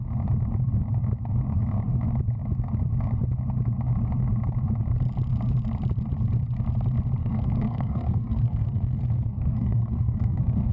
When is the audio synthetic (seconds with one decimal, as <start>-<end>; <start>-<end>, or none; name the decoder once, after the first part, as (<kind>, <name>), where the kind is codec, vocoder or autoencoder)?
7.2-10.7 (codec, SNAC)